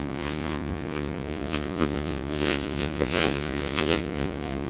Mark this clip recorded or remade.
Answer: remade